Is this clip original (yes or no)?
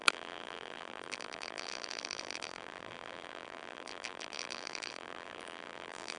no